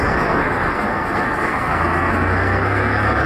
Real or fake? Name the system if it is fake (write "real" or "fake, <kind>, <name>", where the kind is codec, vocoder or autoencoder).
fake, codec, SNAC